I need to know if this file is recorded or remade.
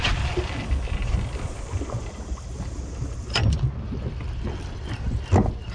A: recorded